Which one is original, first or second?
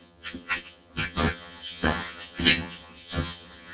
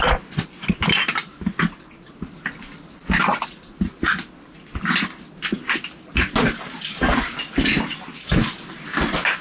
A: second